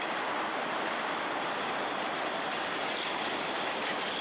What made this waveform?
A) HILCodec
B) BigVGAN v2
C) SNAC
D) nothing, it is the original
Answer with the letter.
D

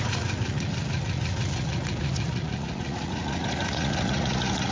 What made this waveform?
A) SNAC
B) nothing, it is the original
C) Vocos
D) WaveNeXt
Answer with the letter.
C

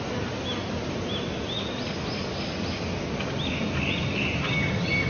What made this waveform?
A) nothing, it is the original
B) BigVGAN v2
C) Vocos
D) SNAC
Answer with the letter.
A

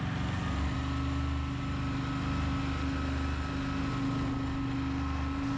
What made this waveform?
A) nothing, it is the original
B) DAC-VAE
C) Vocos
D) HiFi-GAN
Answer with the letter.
A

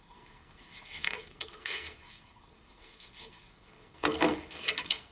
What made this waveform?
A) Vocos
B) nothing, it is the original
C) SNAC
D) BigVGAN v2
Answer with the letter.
C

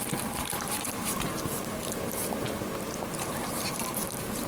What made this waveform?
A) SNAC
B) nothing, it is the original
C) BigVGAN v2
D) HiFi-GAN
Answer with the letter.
C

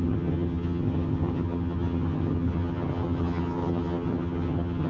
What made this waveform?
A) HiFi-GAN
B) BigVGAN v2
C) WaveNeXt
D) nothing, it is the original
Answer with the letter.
A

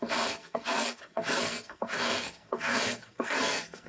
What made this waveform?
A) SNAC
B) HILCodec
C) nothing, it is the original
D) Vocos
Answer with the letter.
A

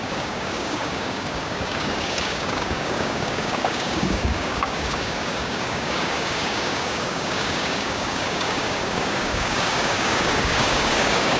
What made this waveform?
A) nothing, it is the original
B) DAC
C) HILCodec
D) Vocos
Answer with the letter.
B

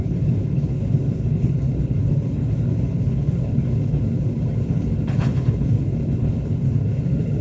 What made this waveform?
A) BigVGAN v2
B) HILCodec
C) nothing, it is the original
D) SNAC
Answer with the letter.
B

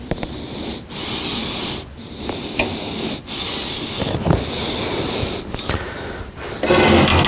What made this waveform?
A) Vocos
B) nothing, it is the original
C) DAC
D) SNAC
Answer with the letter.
B